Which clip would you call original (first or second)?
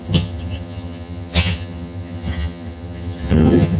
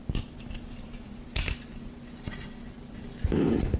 second